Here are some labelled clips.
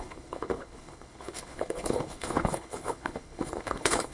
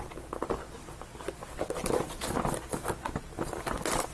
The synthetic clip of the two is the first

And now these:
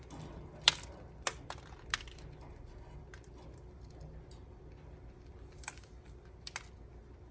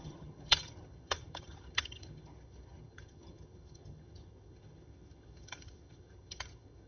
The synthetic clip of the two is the second